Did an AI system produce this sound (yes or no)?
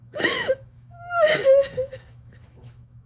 yes